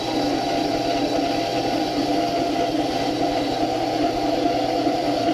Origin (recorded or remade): remade